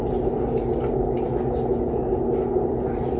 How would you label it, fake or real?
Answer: real